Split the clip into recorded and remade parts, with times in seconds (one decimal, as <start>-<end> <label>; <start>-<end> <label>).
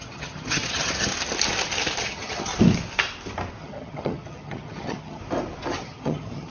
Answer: 0.0-1.1 remade; 1.1-2.0 recorded; 2.0-2.5 remade; 2.5-3.6 recorded; 3.6-5.2 remade; 5.2-5.8 recorded; 5.8-6.5 remade